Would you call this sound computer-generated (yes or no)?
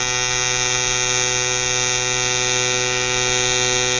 no